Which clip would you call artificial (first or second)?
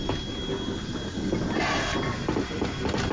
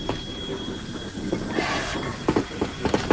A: second